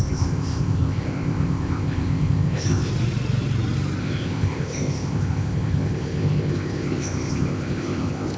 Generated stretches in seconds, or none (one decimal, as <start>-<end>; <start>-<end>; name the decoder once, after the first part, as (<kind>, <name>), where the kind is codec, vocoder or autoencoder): 0.0-2.9 (codec, ZipCodec); 4.0-8.4

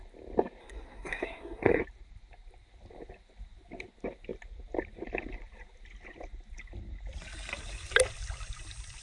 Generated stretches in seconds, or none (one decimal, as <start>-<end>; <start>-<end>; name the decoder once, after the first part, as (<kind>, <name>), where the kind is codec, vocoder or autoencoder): 0.6-1.8 (codec, SNAC)

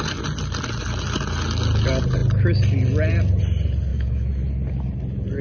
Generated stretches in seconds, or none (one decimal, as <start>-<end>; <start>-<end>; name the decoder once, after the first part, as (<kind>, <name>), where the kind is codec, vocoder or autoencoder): 3.9-4.5 (autoencoder, DAC-VAE)

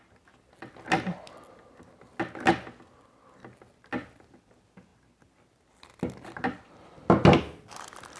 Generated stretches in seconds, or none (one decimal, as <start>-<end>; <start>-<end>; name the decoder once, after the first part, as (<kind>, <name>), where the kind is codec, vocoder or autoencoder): none

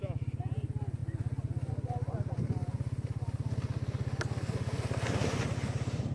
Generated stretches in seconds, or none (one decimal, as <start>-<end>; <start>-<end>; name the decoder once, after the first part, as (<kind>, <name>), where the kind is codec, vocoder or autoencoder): none

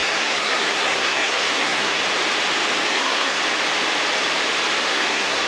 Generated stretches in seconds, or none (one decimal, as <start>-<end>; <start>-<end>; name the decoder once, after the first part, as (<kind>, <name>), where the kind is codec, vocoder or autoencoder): 0.0-2.0 (codec, SNAC); 2.9-3.4; 4.8-5.5

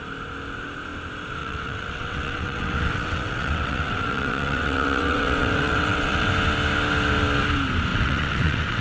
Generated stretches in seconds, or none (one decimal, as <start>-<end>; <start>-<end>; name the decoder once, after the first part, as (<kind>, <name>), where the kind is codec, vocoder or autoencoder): 1.4-6.3 (vocoder, WaveNeXt); 7.9-8.8